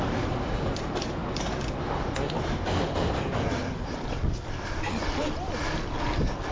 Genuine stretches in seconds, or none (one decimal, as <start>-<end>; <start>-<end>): 0.0-6.5